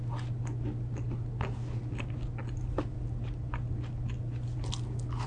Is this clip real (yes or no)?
yes